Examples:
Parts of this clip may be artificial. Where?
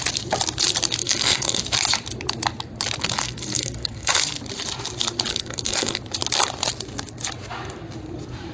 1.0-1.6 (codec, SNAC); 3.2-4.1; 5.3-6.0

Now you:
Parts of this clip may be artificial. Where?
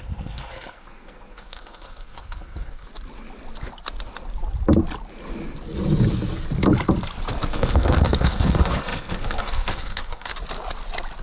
0.0-2.9 (codec, SNAC); 7.5-10.3